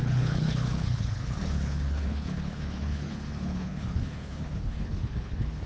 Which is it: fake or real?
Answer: fake